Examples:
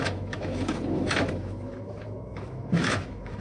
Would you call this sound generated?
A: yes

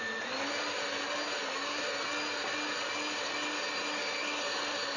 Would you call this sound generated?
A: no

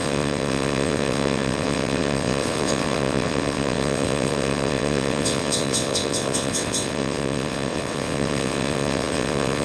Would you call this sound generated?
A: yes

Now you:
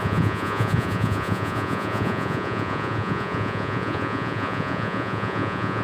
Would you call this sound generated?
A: yes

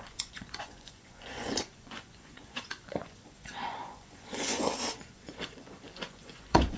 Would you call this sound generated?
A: yes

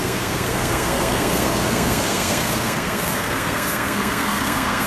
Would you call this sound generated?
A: yes